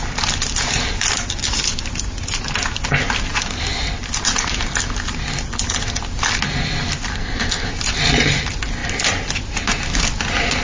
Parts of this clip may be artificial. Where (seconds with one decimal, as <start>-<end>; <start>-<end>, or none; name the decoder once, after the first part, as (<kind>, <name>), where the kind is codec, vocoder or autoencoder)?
7.1-7.7 (codec, SNAC)